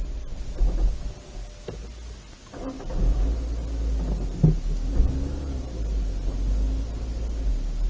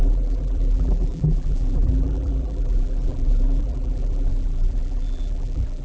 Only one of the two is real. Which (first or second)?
first